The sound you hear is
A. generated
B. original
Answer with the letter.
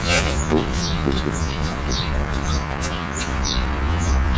A